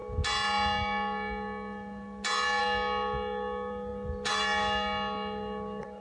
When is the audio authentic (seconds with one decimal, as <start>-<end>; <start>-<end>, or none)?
0.0-6.0